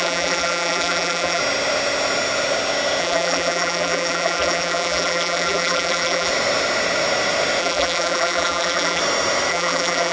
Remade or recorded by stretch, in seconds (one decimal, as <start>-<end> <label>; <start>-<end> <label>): 0.0-1.4 remade; 1.4-3.0 recorded; 3.0-6.3 remade; 6.3-7.6 recorded; 7.6-9.0 remade; 9.0-9.5 recorded; 9.5-10.1 remade